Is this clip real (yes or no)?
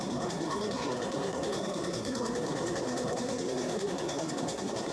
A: no